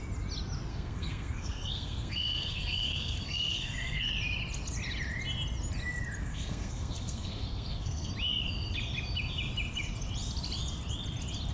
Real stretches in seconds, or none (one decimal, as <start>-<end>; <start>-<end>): 0.0-0.7; 4.1-6.2; 8.1-11.5